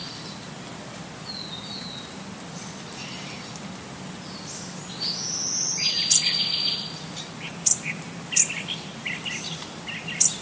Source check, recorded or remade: recorded